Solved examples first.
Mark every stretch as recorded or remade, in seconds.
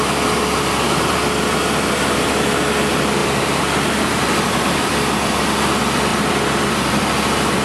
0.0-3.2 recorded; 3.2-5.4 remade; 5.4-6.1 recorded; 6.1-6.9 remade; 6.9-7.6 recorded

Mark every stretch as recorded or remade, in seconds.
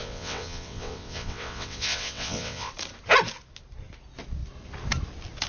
0.0-2.7 remade; 2.7-5.5 recorded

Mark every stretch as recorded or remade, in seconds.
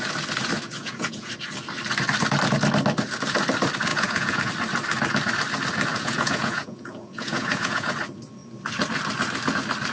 0.0-0.8 recorded; 0.8-1.3 remade; 1.3-3.9 recorded; 3.9-4.5 remade; 4.5-5.9 recorded; 5.9-7.9 remade; 7.9-9.9 recorded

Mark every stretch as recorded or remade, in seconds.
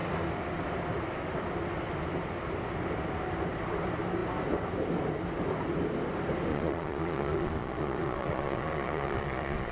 0.0-6.5 recorded; 6.5-9.7 remade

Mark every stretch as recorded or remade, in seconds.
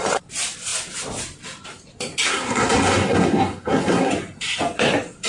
0.0-2.3 recorded; 2.3-4.1 remade; 4.1-5.3 recorded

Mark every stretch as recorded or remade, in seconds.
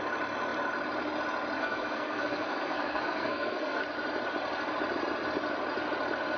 0.0-1.6 recorded; 1.6-3.8 remade; 3.8-6.4 recorded